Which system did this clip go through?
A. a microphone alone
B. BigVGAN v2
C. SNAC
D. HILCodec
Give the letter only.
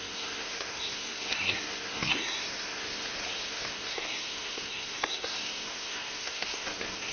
C